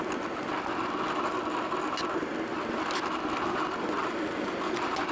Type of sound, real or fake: real